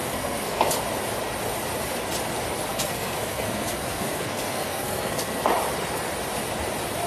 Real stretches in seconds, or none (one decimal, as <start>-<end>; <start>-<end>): 0.7-2.7; 5.4-7.1